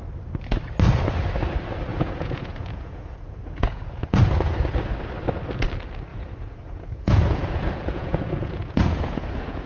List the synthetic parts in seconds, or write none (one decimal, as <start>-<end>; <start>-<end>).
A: 1.9-4.2; 6.1-9.7